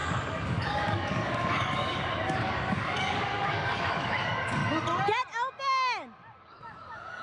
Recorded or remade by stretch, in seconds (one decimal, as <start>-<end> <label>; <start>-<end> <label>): 0.0-4.6 remade; 4.6-6.4 recorded; 6.4-7.2 remade